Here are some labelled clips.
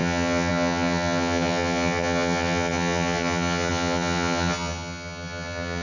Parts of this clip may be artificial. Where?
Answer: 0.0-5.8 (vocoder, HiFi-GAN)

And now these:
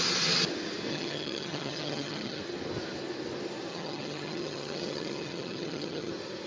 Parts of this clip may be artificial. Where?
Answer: 0.9-2.4 (vocoder, HiFi-GAN); 3.7-6.1

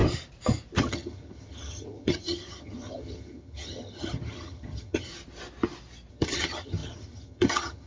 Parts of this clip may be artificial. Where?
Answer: 0.8-5.1 (vocoder, HiFi-GAN); 6.1-7.9

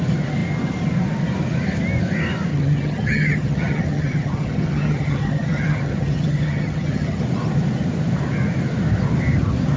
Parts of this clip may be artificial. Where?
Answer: 2.5-7.2 (vocoder, HiFi-GAN)

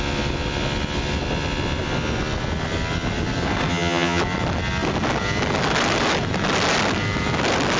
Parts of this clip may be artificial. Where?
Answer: 3.7-4.2 (vocoder, HiFi-GAN)

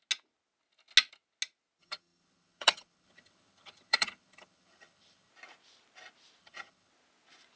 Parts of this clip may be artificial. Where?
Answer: 1.8-5.3 (vocoder, HiFi-GAN); 6.4-6.9

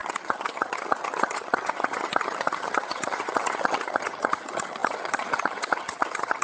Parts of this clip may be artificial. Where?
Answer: 0.0-6.4 (vocoder, HiFi-GAN)